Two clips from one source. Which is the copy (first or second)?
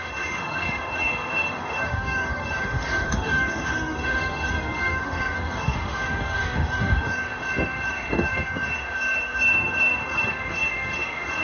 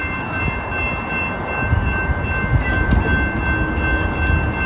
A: first